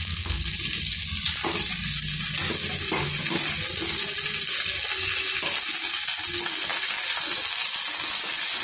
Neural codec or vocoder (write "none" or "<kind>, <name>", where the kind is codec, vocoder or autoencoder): none